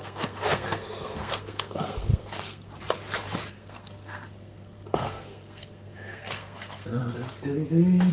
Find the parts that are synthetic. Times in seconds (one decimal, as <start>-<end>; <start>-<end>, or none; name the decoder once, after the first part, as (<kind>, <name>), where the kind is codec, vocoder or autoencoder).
0.0-2.7 (codec, SNAC); 3.5-7.0